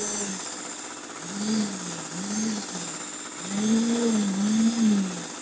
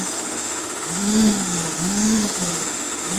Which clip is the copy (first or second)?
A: second